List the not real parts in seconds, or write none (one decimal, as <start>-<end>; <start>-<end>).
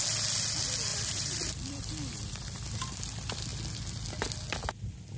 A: 0.9-3.0